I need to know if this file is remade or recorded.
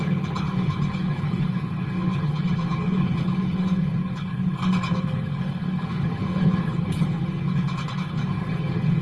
remade